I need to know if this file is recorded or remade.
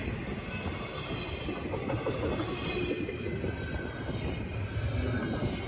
recorded